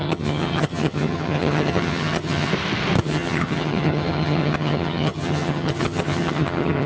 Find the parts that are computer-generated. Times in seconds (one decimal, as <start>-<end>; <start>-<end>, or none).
0.0-2.5; 3.0-6.9